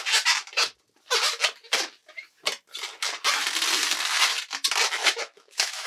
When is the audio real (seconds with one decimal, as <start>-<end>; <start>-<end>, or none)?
0.0-5.0